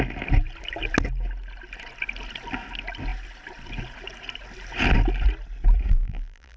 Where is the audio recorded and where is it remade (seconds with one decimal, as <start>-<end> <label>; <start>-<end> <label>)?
0.0-5.9 recorded; 5.9-6.6 remade